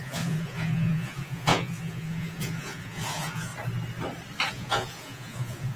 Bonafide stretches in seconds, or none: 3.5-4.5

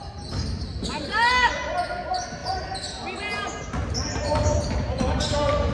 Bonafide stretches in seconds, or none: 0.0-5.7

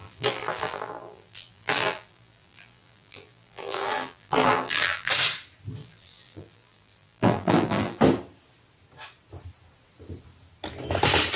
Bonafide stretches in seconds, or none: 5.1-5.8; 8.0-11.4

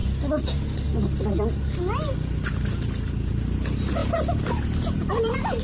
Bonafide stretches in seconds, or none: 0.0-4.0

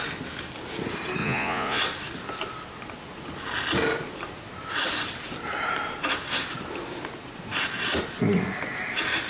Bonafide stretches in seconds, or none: 0.0-1.2; 1.8-9.3

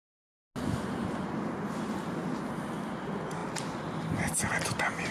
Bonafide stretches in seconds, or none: 0.0-5.1

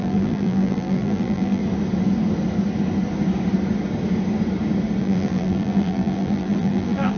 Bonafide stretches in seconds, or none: 1.6-5.0